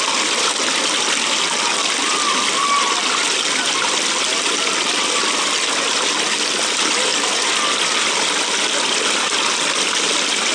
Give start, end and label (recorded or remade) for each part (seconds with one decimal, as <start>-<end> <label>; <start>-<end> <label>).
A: 0.0-10.5 recorded